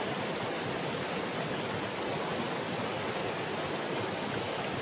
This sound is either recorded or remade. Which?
recorded